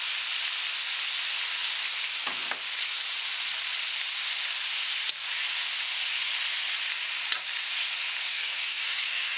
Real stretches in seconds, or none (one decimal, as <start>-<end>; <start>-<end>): 0.0-8.3